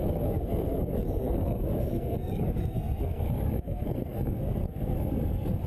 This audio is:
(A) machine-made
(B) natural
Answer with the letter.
A